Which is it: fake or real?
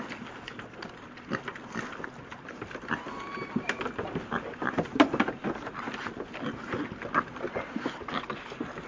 real